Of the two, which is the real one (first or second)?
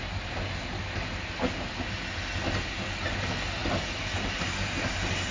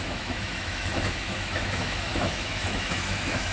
first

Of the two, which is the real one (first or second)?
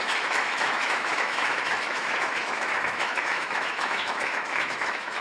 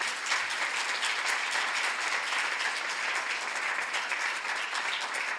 second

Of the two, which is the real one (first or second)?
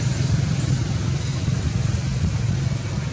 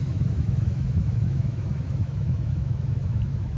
first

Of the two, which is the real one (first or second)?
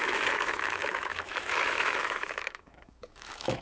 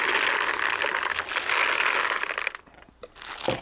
second